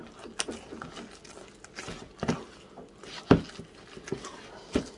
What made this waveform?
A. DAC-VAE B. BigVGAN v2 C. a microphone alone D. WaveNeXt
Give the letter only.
C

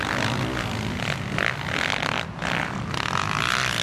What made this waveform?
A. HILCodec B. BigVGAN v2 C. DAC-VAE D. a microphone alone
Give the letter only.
D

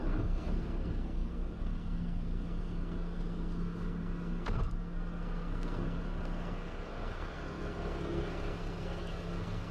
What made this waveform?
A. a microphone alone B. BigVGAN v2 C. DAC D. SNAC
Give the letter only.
D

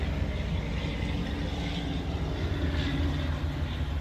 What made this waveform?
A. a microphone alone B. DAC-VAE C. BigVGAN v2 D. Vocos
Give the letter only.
A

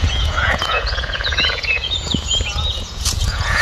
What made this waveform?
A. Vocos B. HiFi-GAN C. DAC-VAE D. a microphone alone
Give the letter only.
A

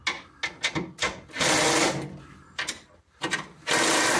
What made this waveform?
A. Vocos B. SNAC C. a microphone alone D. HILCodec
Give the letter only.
C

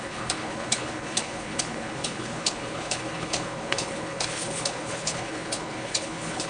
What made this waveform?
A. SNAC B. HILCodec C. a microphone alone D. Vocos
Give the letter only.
B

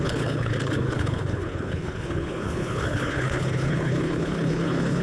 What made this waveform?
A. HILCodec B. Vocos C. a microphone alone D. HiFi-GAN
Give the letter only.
A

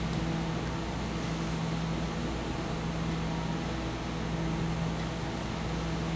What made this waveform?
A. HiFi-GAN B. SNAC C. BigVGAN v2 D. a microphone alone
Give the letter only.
D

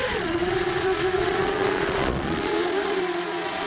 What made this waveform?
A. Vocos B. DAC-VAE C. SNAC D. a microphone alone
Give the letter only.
A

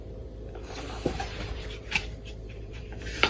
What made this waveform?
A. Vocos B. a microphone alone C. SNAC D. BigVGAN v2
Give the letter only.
D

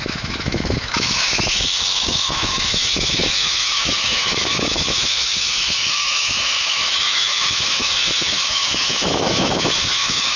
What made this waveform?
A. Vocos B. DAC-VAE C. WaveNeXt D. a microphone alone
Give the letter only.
B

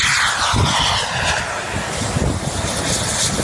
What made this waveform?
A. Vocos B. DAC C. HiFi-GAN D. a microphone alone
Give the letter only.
D